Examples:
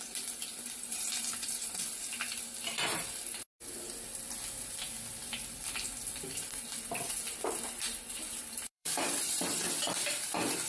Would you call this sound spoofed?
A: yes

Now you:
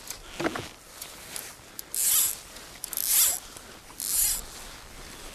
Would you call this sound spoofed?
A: no